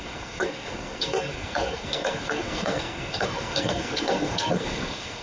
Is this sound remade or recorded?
remade